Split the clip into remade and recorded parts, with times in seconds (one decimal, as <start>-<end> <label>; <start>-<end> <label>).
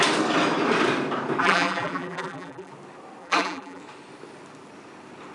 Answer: 0.0-1.4 recorded; 1.4-2.7 remade; 2.7-3.2 recorded; 3.2-3.8 remade; 3.8-5.3 recorded